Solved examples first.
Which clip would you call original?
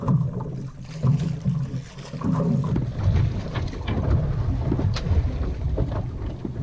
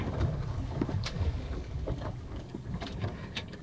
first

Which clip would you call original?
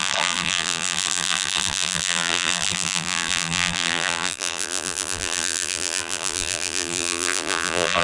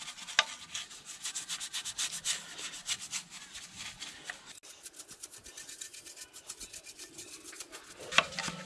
second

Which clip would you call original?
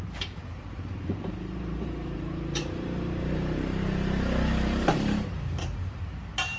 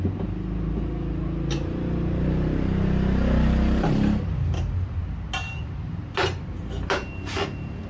second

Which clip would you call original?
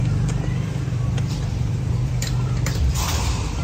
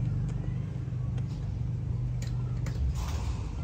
second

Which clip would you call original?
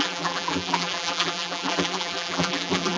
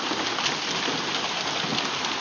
second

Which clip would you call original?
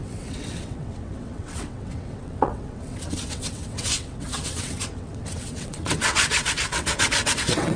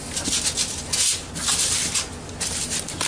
second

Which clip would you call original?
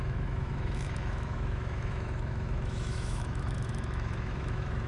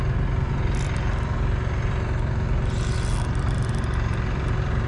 second